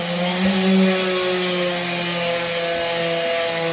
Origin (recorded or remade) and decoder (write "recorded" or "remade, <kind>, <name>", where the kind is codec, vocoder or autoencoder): recorded